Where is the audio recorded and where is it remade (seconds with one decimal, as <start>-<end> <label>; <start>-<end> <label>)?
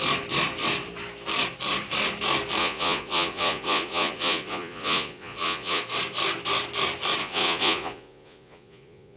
0.0-2.6 recorded; 2.6-5.8 remade; 5.8-7.2 recorded; 7.2-9.2 remade